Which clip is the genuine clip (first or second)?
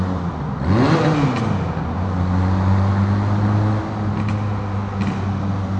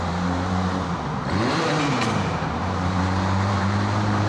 first